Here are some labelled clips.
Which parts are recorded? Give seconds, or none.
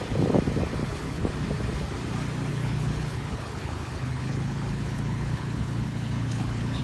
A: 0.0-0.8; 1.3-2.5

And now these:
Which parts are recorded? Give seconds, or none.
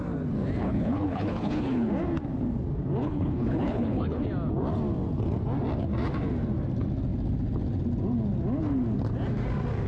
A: 0.0-0.6; 1.9-3.0; 4.2-9.9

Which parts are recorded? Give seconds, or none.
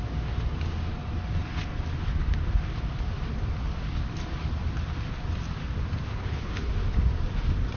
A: 0.0-6.1; 6.7-7.8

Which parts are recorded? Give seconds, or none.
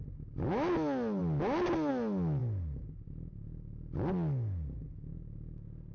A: 0.0-5.9